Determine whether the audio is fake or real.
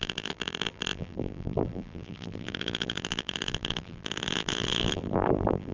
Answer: fake